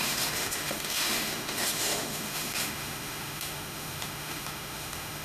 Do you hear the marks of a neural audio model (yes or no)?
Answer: yes